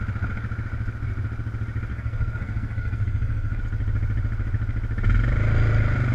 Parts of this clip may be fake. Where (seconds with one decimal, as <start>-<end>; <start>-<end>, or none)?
1.9-3.6